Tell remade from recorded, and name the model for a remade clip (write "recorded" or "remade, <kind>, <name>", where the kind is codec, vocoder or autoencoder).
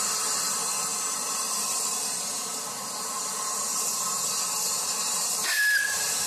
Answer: recorded